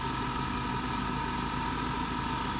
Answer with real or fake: real